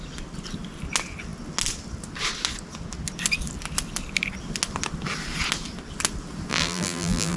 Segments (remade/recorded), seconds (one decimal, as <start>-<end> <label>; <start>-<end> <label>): 0.0-6.5 recorded; 6.5-7.4 remade